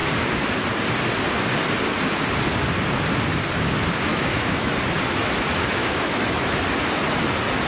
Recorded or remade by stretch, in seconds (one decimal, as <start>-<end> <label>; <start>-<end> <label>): 0.0-4.1 recorded; 4.1-4.7 remade; 4.7-5.8 recorded; 5.8-6.6 remade; 6.6-7.7 recorded